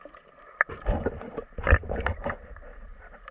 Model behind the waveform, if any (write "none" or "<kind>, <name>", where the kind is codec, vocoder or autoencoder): vocoder, BigVGAN v2